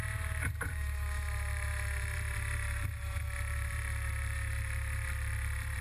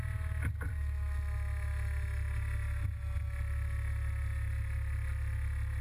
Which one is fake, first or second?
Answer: first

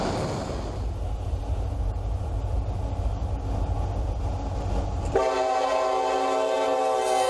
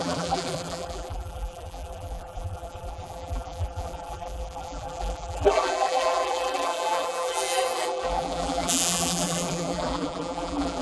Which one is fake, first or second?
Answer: second